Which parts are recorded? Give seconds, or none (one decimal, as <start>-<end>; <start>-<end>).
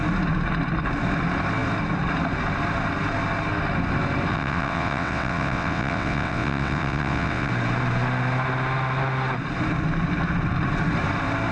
0.0-4.3; 7.5-11.5